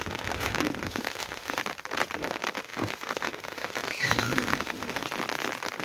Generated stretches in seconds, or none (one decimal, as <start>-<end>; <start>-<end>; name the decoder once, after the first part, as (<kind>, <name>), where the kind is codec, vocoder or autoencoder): 0.0-1.6 (autoencoder, DAC-VAE); 2.2-5.0